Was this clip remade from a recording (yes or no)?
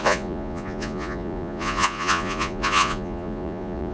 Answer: yes